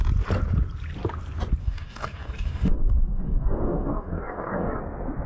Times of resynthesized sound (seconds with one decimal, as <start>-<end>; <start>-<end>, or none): 1.6-4.8

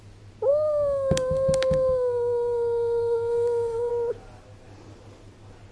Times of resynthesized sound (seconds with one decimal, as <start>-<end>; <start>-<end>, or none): 0.5-3.9

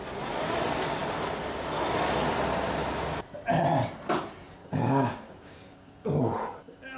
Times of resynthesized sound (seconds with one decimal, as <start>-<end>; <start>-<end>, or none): 4.6-6.2